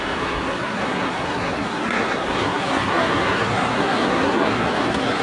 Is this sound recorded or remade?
remade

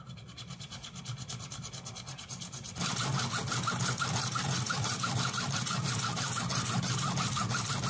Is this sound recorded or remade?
recorded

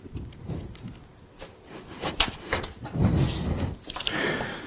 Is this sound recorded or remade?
recorded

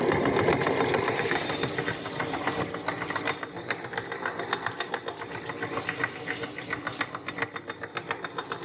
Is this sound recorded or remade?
recorded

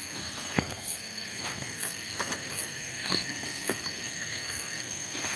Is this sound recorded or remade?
remade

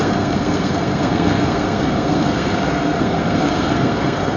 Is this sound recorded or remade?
remade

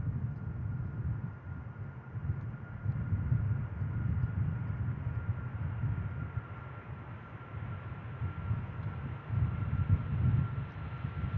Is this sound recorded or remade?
recorded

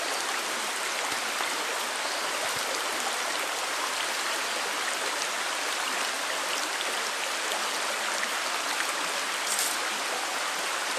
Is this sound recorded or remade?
recorded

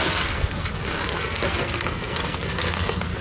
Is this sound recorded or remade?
remade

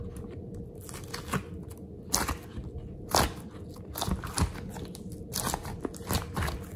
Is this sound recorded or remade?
recorded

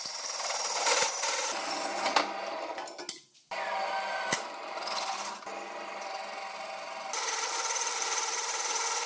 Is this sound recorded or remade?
recorded